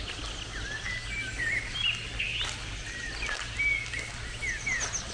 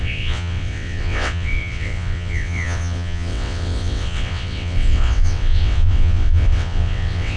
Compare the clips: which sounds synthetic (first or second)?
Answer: second